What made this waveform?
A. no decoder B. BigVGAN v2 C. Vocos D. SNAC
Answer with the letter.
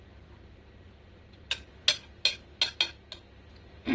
A